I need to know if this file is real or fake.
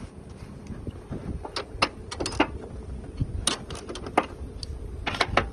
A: real